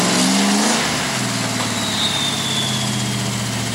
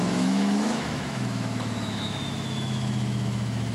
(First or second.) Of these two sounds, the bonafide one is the first